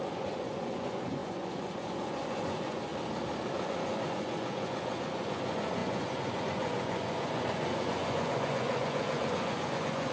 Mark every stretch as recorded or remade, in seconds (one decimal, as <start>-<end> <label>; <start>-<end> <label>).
0.0-2.9 remade; 2.9-3.5 recorded; 3.5-10.1 remade